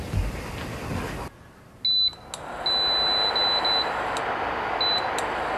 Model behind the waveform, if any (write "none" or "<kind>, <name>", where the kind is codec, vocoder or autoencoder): none